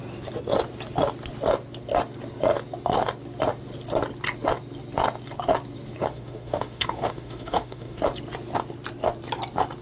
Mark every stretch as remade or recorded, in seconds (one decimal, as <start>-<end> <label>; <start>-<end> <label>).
0.0-6.1 recorded; 6.1-8.0 remade; 8.0-9.8 recorded